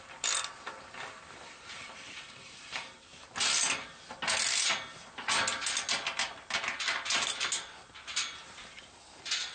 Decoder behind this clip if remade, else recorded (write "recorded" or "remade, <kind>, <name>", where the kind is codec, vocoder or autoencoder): recorded